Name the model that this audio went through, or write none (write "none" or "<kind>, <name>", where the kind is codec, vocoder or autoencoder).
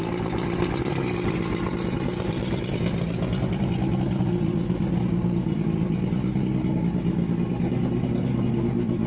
none